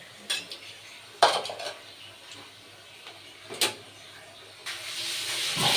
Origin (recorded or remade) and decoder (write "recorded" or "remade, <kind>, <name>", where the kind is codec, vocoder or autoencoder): recorded